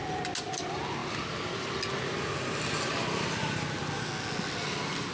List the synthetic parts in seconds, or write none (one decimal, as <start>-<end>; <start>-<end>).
none